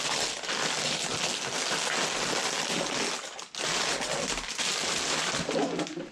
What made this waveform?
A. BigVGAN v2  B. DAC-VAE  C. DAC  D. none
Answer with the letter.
D